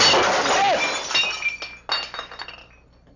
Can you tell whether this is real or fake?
real